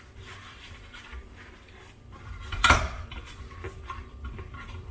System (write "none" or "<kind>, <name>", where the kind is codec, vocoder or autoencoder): vocoder, BigVGAN v2